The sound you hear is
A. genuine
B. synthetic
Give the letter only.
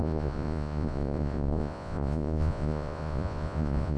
B